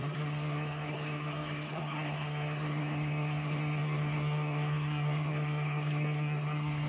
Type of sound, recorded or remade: remade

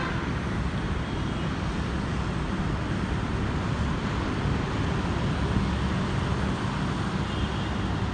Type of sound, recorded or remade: recorded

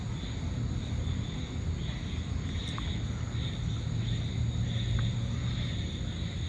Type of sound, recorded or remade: recorded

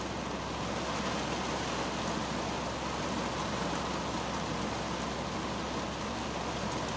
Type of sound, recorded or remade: recorded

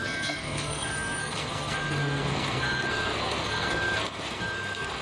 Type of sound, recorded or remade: remade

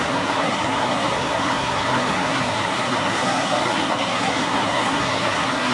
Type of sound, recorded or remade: remade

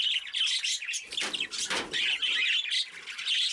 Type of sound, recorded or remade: recorded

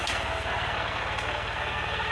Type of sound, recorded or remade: remade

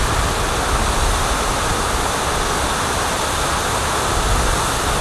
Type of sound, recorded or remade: recorded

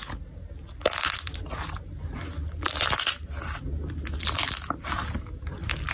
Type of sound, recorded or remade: recorded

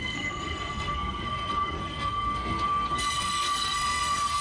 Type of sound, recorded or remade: remade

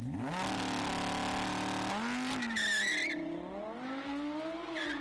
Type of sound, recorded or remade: recorded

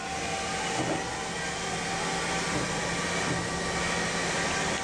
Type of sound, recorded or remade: recorded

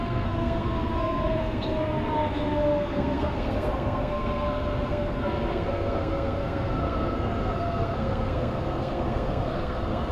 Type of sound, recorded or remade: remade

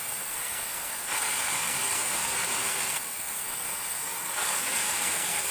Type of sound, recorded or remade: remade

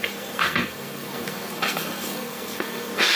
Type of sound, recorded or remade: remade